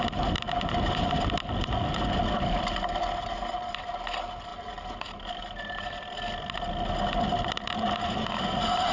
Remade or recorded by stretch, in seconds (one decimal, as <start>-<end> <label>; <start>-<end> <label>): 0.0-8.9 recorded